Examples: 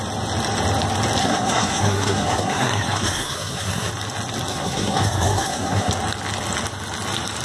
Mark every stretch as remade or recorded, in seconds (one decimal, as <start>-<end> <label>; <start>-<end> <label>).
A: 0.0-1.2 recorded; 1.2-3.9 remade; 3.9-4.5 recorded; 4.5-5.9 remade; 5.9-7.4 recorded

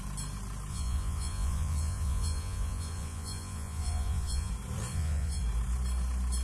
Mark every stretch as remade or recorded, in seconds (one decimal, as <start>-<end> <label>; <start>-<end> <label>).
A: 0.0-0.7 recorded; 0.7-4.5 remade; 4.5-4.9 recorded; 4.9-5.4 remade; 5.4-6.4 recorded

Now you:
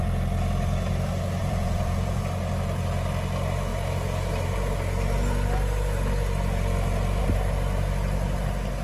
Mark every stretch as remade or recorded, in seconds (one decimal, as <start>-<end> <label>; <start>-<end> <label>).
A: 0.0-1.4 recorded; 1.4-2.2 remade; 2.2-8.8 recorded

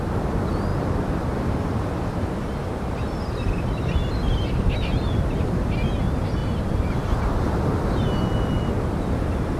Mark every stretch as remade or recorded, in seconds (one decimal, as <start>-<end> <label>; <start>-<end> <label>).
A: 0.0-0.7 recorded; 0.7-1.7 remade; 1.7-6.4 recorded; 6.4-7.6 remade; 7.6-9.6 recorded